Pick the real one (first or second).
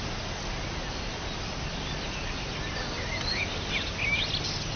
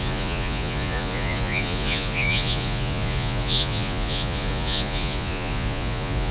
first